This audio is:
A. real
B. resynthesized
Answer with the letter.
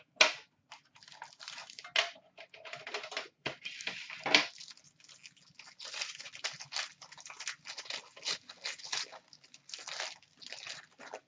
A